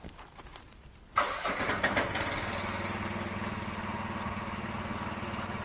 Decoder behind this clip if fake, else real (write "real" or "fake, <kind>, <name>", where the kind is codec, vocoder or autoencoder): real